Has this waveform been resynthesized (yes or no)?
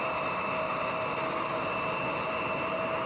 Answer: no